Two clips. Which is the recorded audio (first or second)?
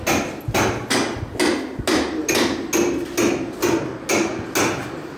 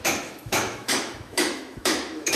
first